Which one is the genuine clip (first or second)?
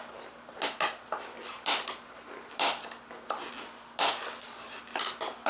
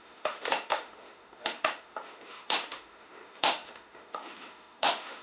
first